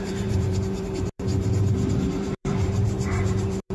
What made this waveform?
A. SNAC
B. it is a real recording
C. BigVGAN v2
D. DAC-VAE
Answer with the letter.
C